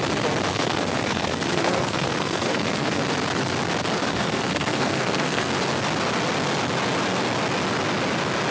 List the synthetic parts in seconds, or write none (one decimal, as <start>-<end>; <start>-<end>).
0.5-3.0; 4.1-5.5